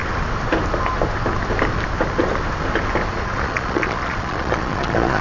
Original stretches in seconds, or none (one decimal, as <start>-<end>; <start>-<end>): 0.0-3.1